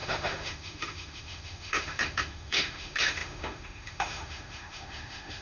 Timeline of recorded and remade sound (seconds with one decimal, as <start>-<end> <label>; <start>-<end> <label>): 0.0-5.4 remade